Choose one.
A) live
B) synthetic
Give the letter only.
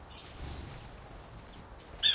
A